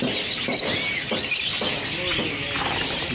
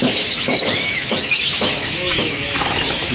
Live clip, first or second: first